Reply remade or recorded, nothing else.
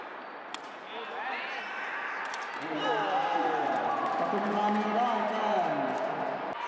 recorded